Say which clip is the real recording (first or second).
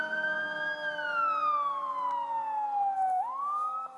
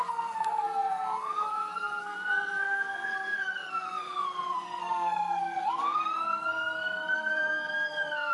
first